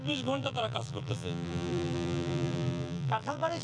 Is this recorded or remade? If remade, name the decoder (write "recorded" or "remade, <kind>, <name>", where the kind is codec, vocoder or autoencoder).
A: remade, vocoder, BigVGAN v2